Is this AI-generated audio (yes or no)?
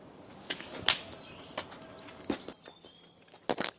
no